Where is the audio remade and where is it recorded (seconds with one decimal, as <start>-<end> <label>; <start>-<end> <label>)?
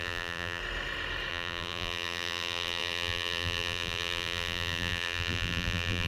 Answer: 0.0-0.6 remade; 0.6-1.3 recorded; 1.3-6.1 remade